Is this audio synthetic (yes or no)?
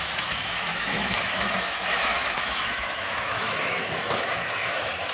yes